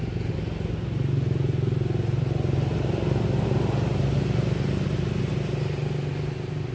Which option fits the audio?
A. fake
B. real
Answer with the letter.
B